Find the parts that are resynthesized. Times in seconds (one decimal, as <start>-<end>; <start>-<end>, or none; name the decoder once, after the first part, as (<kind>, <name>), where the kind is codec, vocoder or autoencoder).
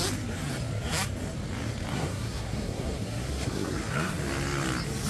1.9-4.1 (codec, SNAC)